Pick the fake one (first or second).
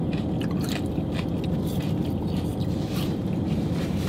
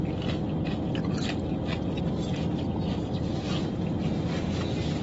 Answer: first